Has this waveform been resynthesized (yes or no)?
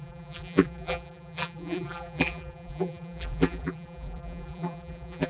yes